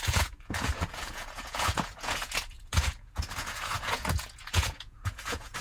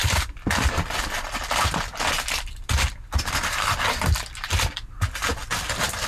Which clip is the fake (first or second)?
first